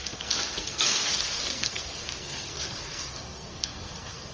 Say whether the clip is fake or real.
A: fake